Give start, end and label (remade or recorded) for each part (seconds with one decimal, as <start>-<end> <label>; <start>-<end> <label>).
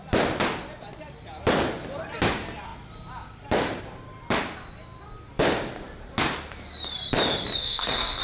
0.0-7.6 recorded; 7.6-8.2 remade